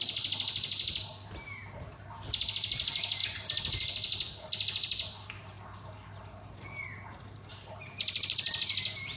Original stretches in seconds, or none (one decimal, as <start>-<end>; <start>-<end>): 0.0-9.2